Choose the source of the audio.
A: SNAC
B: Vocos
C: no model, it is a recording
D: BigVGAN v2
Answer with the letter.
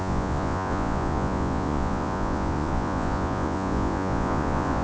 B